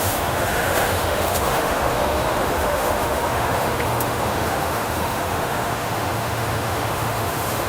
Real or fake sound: fake